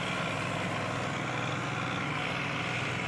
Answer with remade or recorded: recorded